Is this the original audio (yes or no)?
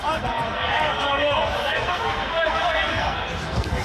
no